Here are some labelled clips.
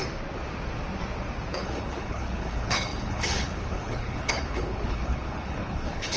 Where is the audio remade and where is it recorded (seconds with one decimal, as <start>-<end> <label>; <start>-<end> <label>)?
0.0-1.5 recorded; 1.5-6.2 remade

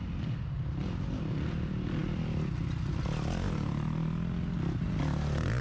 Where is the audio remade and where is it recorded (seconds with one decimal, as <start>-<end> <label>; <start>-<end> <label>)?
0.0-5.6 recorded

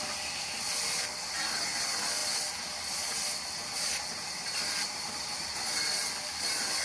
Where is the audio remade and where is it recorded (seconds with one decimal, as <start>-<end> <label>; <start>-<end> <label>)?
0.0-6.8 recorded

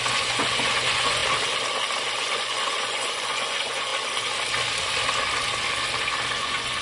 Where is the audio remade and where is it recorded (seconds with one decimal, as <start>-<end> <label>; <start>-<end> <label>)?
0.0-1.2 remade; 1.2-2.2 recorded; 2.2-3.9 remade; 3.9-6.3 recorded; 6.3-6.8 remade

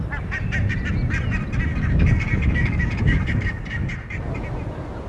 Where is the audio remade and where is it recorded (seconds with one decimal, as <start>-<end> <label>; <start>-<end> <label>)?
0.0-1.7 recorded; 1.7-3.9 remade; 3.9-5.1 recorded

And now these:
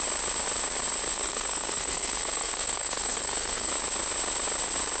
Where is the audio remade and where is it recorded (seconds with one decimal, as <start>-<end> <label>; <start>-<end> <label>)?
0.0-1.1 recorded; 1.1-3.7 remade; 3.7-5.0 recorded

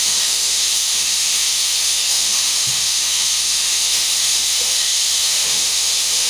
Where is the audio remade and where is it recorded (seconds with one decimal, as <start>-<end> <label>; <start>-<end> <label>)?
0.0-6.3 remade

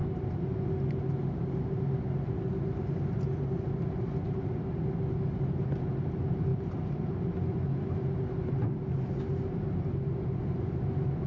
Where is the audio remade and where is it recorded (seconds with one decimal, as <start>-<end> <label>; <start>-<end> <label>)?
0.0-11.3 recorded